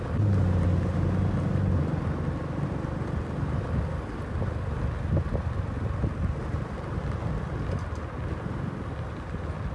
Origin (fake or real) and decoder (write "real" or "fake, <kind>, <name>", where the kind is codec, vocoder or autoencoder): real